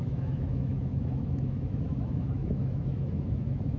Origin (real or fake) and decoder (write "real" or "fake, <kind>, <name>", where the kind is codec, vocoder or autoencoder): fake, autoencoder, DAC-VAE